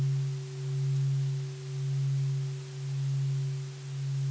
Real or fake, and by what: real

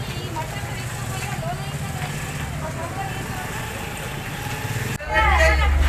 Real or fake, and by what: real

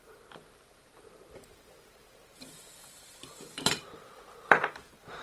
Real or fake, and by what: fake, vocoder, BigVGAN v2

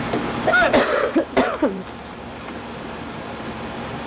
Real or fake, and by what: fake, vocoder, BigVGAN v2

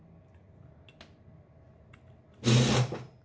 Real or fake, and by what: real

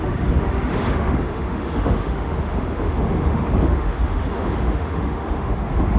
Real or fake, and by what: fake, autoencoder, DAC-VAE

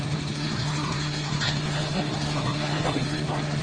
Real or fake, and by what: fake, codec, SNAC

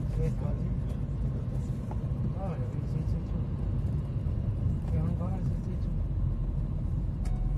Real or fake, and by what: fake, vocoder, BigVGAN v2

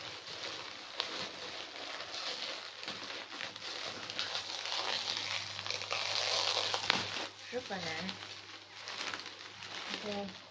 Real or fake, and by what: real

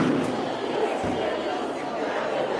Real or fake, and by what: real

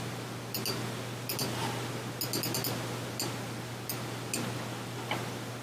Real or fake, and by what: real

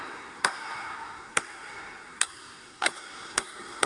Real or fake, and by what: fake, codec, SNAC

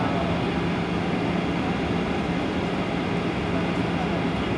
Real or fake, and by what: real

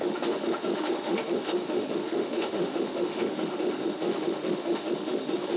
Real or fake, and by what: fake, autoencoder, DAC-VAE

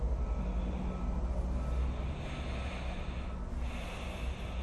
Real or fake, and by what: real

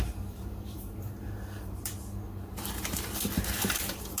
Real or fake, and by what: fake, vocoder, BigVGAN v2